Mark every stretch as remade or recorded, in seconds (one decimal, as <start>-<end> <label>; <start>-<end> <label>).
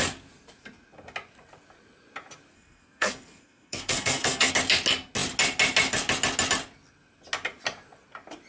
0.0-2.5 recorded; 2.5-4.5 remade; 4.5-8.5 recorded